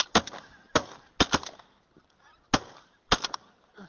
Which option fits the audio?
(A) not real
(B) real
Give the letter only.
B